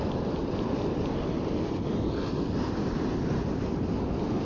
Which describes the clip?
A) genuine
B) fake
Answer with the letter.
A